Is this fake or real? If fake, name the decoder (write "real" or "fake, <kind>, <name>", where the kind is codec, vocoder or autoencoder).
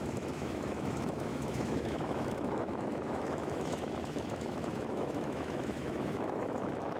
fake, autoencoder, DAC-VAE